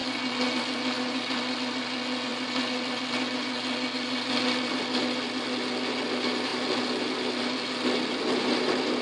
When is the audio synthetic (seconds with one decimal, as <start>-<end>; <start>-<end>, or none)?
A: none